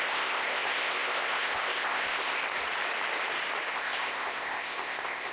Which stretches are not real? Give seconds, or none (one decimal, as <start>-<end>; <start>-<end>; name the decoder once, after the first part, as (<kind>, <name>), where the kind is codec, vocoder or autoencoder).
0.0-2.4 (codec, ZipCodec); 3.7-5.3